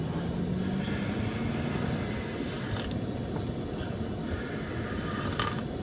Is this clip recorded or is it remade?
recorded